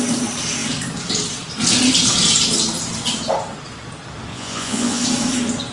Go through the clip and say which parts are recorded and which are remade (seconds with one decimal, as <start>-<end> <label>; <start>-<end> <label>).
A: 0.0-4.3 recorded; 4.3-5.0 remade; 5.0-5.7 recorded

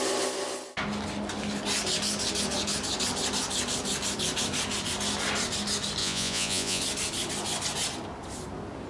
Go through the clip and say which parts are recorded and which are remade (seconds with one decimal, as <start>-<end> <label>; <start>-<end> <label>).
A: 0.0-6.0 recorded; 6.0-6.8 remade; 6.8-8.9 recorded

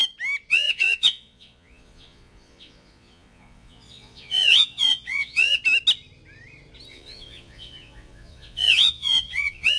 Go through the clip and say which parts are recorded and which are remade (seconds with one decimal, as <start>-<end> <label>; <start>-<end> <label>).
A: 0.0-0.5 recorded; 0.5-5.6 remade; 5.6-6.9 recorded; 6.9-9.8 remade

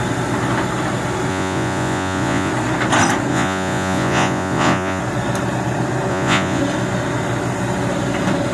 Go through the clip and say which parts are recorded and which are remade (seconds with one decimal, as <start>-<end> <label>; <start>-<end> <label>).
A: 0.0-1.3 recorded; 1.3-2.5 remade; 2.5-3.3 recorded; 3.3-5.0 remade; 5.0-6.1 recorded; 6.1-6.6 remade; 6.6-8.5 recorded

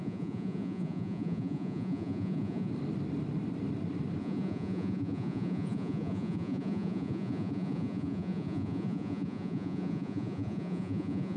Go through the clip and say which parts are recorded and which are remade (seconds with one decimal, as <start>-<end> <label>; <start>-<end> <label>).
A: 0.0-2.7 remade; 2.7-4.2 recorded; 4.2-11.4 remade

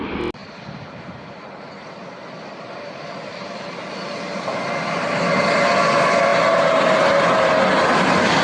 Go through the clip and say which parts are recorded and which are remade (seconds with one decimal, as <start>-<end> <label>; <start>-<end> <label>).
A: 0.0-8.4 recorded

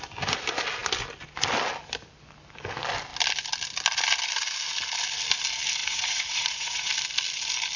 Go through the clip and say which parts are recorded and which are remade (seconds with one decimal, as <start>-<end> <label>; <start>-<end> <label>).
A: 0.0-5.8 recorded; 5.8-6.9 remade; 6.9-7.8 recorded

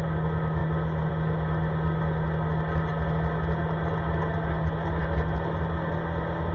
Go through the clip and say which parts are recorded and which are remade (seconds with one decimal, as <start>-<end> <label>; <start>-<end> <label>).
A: 0.0-6.5 recorded